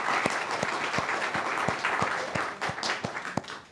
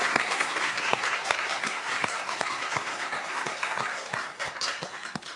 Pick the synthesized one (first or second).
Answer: second